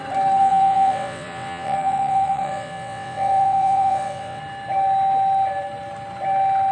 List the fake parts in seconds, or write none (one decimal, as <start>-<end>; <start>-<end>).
0.4-4.4

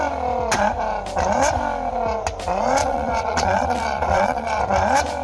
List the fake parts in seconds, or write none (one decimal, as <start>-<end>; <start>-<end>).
2.8-4.6

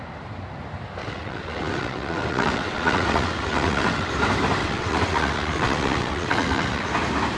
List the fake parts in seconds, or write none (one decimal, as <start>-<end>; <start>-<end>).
1.0-4.1; 4.6-6.9